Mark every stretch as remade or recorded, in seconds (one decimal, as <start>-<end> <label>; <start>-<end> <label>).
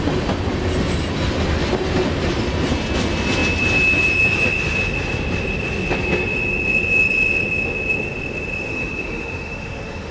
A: 0.0-8.7 recorded; 8.7-10.1 remade